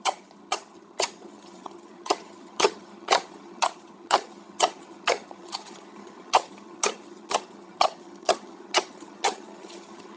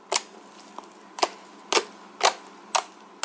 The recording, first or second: second